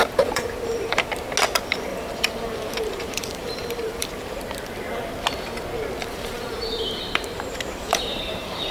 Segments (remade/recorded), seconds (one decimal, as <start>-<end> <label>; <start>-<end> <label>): 0.0-1.1 remade; 1.1-1.9 recorded; 1.9-4.1 remade; 4.1-6.0 recorded; 6.0-8.7 remade